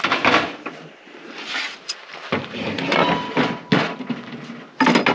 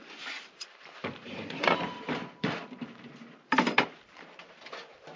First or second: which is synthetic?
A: second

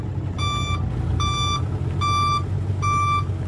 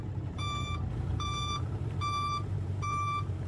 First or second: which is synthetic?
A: second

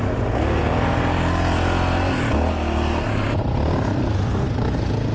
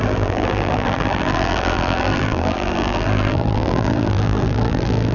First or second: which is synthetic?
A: second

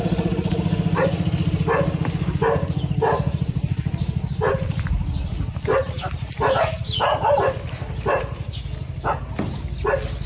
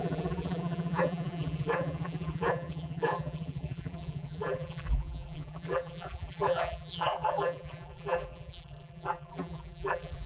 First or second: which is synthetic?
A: second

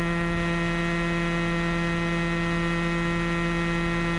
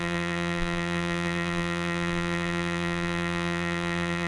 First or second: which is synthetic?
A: second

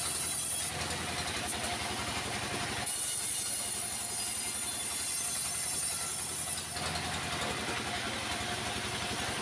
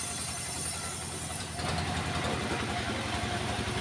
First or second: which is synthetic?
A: second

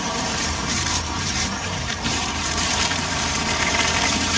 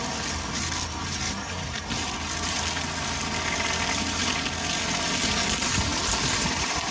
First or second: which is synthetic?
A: first